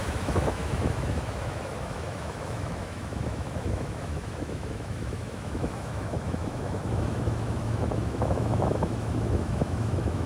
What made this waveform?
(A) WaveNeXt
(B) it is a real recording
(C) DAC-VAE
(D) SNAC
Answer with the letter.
C